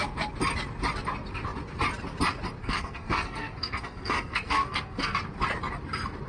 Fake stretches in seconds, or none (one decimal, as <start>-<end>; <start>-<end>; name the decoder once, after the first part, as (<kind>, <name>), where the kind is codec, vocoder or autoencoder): 2.6-5.2 (codec, SNAC)